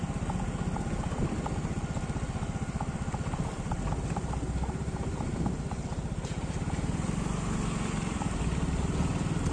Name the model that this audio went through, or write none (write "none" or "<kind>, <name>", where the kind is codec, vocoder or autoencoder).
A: none